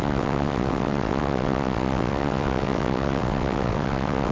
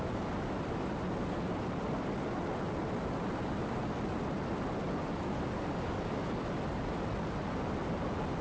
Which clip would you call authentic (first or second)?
second